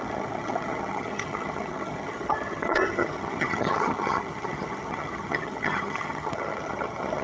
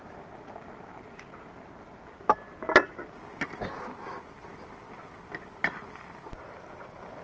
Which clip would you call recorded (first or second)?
second